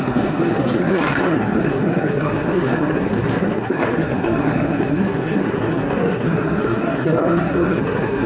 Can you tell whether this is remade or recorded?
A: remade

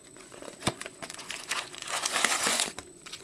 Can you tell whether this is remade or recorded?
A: remade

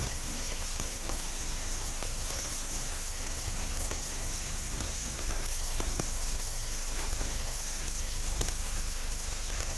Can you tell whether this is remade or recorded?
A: remade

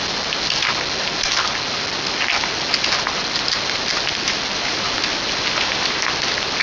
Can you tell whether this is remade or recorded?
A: recorded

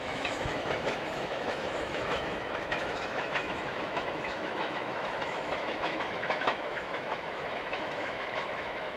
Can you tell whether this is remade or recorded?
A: remade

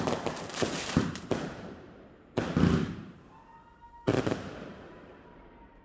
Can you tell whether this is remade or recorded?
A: remade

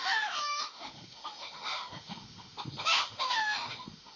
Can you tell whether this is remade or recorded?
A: remade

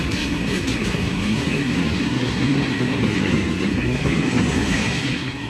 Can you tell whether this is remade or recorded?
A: remade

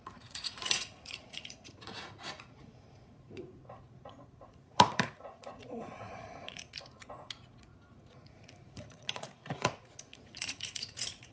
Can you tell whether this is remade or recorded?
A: remade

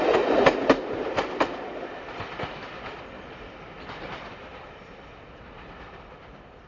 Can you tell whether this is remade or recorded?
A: recorded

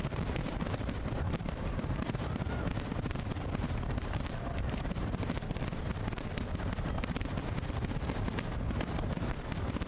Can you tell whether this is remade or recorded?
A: remade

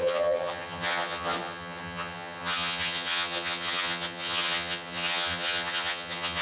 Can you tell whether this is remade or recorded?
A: remade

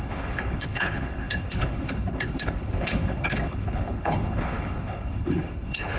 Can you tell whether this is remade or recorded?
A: remade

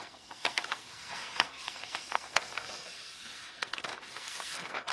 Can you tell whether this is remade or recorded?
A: remade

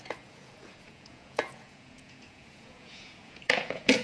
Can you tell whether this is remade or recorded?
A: remade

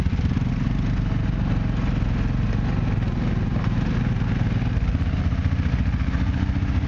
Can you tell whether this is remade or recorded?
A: recorded